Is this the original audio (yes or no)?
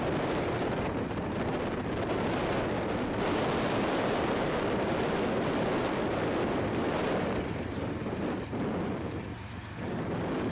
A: yes